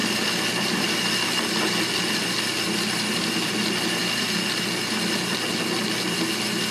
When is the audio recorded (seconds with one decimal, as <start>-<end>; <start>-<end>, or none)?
0.0-6.7